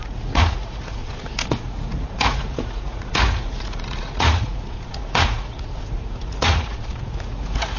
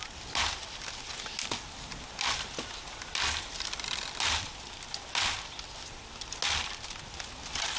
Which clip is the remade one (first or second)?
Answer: first